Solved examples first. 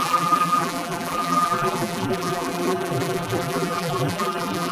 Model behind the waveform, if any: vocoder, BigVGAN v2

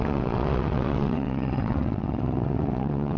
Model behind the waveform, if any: vocoder, WaveNeXt